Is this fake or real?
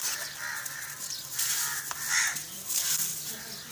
real